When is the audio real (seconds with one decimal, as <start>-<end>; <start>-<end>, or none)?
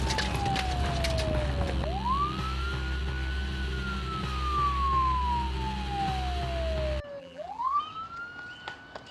0.0-7.2; 7.8-9.1